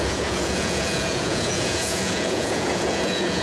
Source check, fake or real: fake